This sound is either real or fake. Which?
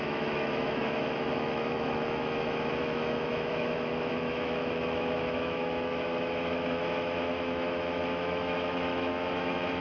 fake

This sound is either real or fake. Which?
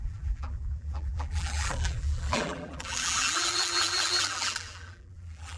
fake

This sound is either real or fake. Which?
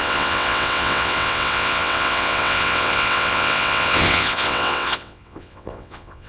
fake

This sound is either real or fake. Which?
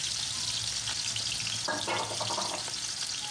real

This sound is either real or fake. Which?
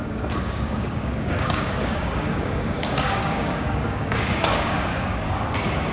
fake